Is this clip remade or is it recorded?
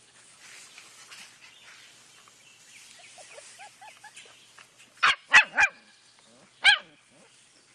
recorded